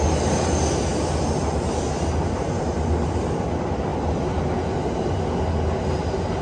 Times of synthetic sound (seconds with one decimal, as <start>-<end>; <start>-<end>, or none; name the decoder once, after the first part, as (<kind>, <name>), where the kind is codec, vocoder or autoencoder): none